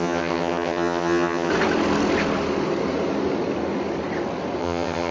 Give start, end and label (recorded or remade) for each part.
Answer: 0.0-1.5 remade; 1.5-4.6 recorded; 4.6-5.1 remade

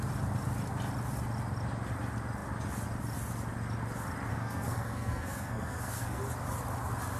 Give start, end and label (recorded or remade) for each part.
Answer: 0.0-4.3 recorded; 4.3-6.2 remade; 6.2-7.2 recorded

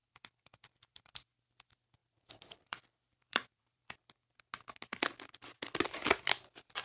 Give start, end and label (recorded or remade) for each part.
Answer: 0.0-1.0 remade; 1.0-2.0 recorded; 2.0-4.1 remade; 4.1-6.8 recorded

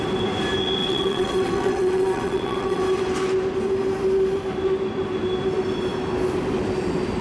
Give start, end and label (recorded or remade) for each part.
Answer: 0.0-0.8 recorded; 0.8-2.8 remade; 2.8-7.2 recorded